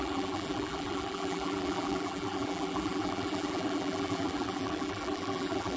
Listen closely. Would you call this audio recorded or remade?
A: remade